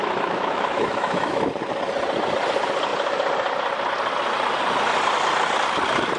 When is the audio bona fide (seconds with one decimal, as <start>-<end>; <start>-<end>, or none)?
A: 1.5-6.2